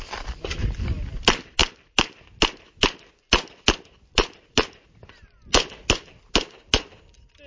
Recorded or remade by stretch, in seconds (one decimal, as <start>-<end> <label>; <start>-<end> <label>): 0.0-7.5 recorded